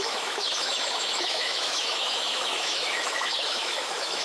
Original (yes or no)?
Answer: no